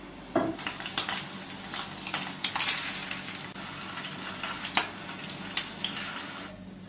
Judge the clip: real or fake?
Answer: real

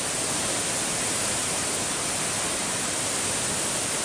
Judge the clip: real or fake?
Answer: real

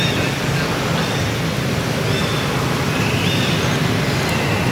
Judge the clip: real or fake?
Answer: real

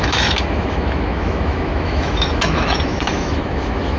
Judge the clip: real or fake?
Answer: fake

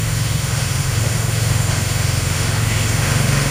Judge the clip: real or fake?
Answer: fake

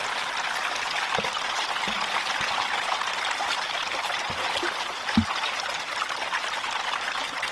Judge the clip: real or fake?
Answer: real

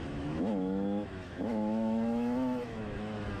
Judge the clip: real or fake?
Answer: fake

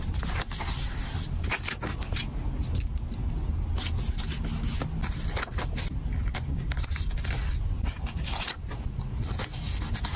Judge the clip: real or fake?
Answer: real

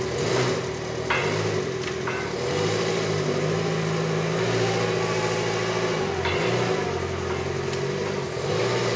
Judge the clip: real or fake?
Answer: real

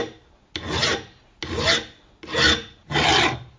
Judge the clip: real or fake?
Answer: real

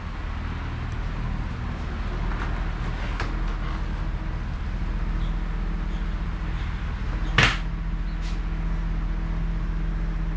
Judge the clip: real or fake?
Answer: real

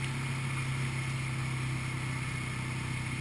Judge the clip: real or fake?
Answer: real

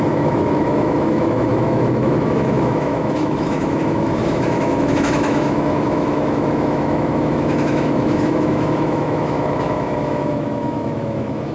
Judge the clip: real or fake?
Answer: fake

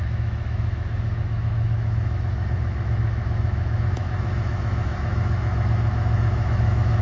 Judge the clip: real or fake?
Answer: fake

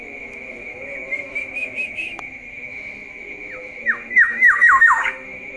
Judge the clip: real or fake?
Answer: fake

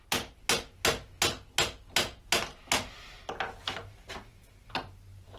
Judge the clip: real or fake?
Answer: real